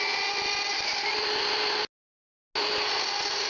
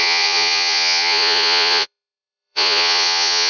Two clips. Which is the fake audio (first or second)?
second